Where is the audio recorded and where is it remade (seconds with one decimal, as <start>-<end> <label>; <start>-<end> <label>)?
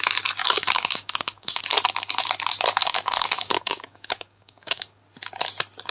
0.0-0.4 recorded; 0.4-1.6 remade; 1.6-2.8 recorded; 2.8-5.0 remade; 5.0-5.9 recorded